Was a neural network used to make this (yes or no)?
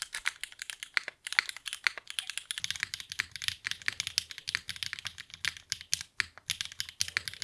no